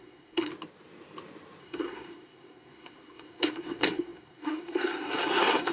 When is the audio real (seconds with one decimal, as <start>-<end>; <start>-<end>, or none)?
0.5-1.6